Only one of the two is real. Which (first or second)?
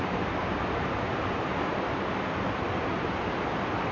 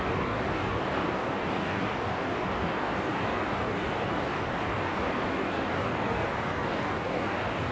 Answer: first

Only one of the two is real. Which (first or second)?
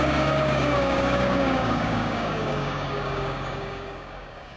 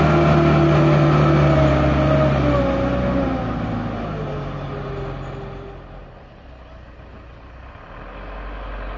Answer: second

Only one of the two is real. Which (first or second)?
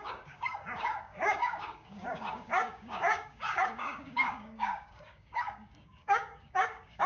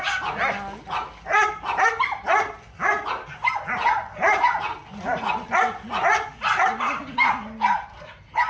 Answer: second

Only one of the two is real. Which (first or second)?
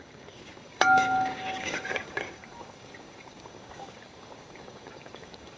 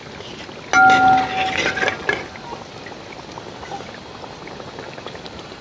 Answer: second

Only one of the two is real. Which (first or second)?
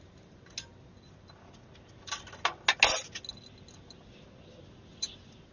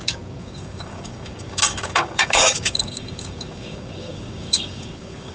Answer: first